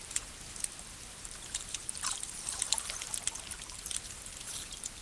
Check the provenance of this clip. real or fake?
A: fake